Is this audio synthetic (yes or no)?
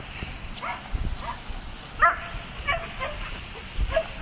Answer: no